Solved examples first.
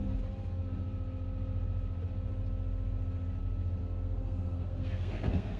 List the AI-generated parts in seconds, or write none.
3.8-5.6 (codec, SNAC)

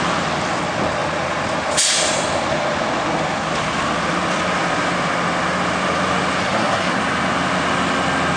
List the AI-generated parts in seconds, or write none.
6.4-7.0 (codec, SNAC)